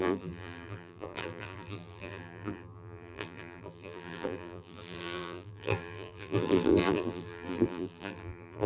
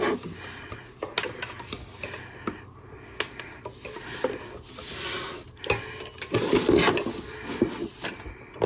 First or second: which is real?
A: second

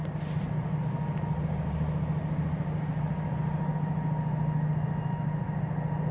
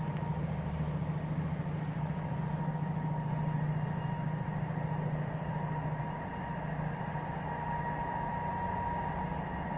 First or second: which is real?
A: first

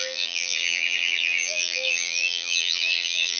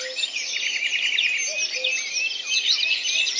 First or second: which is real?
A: second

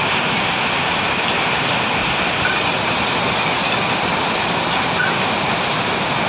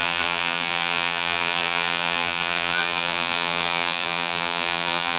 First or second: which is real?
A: first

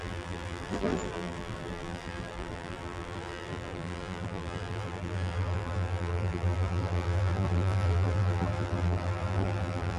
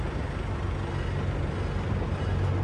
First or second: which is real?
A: second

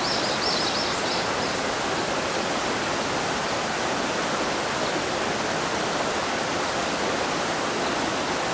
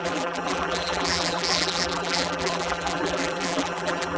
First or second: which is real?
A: first